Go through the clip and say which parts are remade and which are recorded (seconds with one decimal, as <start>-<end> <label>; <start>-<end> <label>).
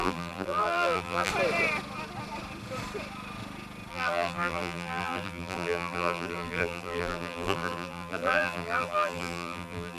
0.0-1.3 remade; 1.3-3.9 recorded; 3.9-10.0 remade